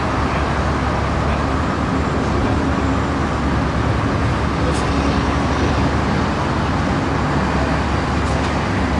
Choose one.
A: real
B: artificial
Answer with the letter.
A